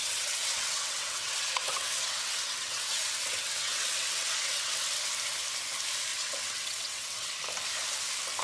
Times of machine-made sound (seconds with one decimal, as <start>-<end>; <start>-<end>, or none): 0.0-5.0; 6.1-7.3